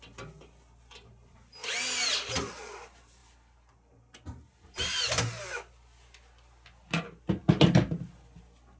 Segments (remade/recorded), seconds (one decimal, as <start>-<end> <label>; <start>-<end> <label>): 0.0-8.8 recorded